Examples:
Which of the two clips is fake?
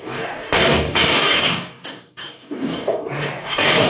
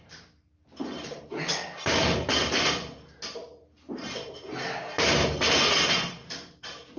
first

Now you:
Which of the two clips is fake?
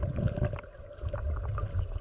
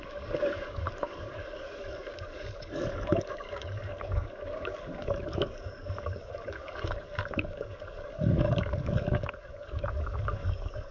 second